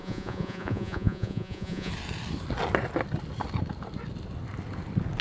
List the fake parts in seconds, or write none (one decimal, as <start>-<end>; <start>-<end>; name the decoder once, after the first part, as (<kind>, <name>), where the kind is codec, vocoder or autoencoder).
0.0-1.9 (vocoder, Vocos)